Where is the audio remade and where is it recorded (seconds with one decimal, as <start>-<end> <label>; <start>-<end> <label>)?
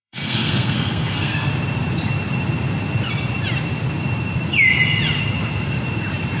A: 0.0-1.5 remade; 1.5-6.4 recorded